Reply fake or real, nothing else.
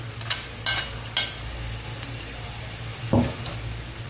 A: real